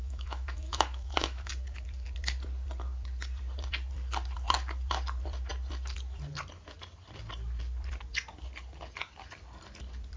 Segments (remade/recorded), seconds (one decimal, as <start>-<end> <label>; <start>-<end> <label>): 0.0-1.5 remade; 1.5-10.2 recorded